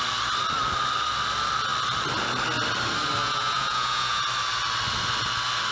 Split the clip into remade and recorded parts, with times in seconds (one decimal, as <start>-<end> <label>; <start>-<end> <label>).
0.0-3.2 recorded; 3.2-4.2 remade; 4.2-5.7 recorded